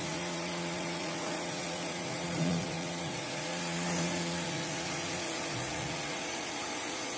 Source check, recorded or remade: remade